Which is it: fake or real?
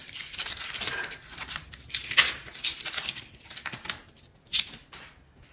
real